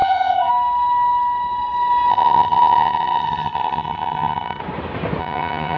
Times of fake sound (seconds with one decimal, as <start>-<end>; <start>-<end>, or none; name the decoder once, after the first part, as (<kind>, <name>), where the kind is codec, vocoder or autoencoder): 0.0-0.5 (vocoder, HiFi-GAN); 2.1-4.6; 5.2-5.8